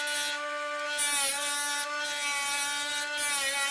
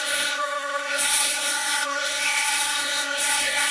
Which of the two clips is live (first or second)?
first